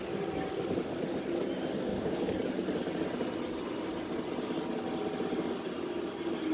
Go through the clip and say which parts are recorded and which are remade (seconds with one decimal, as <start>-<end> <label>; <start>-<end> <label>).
0.0-1.9 recorded; 1.9-2.4 remade; 2.4-6.5 recorded